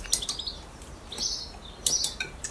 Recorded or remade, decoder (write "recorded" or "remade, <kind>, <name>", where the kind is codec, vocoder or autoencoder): recorded